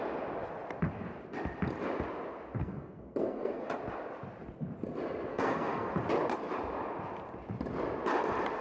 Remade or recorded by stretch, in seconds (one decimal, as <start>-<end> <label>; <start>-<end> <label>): 0.0-2.6 recorded; 2.6-3.7 remade; 3.7-5.3 recorded; 5.3-5.9 remade; 5.9-8.6 recorded